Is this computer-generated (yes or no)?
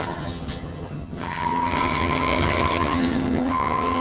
yes